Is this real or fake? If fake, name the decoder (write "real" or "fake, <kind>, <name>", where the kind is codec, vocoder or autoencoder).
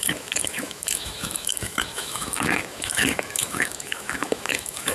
fake, autoencoder, DAC-VAE